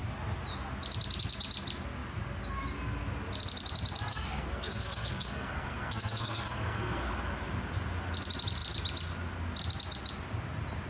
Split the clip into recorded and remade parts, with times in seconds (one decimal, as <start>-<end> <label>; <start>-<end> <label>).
0.0-4.1 recorded; 4.1-7.1 remade; 7.1-10.9 recorded